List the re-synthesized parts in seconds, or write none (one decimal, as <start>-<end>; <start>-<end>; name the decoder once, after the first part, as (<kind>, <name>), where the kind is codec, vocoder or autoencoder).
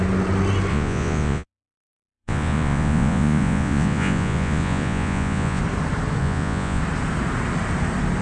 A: 0.7-5.6 (vocoder, Vocos); 6.2-6.8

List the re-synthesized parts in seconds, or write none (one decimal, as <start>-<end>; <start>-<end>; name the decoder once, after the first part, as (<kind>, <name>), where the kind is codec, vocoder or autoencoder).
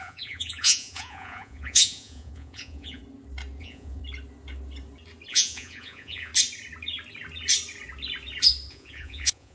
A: 0.0-3.0 (vocoder, Vocos); 3.6-4.0; 5.3-6.3; 8.7-9.5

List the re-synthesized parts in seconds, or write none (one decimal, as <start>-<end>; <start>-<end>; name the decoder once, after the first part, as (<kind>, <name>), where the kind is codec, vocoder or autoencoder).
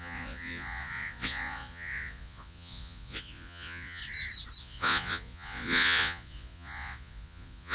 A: 0.0-4.0 (vocoder, Vocos); 4.6-7.7